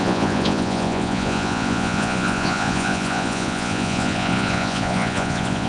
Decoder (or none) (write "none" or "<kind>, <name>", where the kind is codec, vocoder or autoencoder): vocoder, Vocos